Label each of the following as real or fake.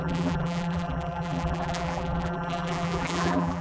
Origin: fake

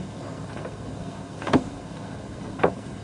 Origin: fake